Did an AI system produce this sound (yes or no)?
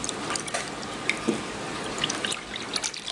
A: no